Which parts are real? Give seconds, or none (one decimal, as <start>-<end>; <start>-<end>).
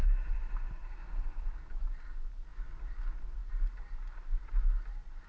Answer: 0.0-5.3